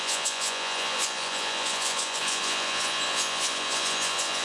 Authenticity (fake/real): fake